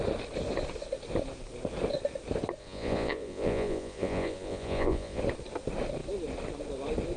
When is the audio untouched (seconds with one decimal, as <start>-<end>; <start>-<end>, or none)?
0.0-2.6; 5.2-7.2